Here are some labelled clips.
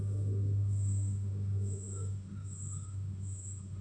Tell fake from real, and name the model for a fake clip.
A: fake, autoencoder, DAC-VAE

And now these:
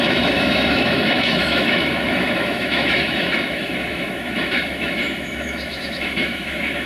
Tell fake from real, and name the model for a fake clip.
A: fake, autoencoder, DAC-VAE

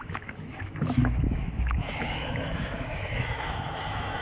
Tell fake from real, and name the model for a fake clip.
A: fake, autoencoder, DAC-VAE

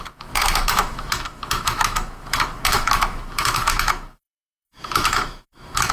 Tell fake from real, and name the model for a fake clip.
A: fake, autoencoder, DAC-VAE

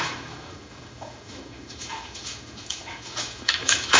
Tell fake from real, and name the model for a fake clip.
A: fake, autoencoder, DAC-VAE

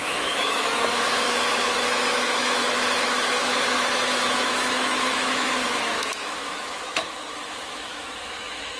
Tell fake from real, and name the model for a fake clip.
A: fake, autoencoder, DAC-VAE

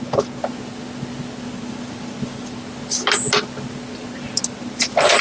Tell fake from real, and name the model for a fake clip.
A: real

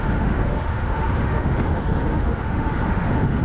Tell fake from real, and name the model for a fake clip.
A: fake, autoencoder, DAC-VAE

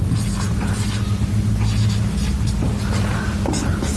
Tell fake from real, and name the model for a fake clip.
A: real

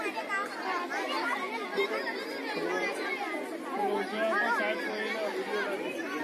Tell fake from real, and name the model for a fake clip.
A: real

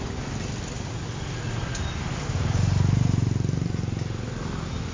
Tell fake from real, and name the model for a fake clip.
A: real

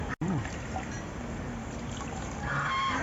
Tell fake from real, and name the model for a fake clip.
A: real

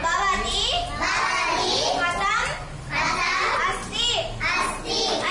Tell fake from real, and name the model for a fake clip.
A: real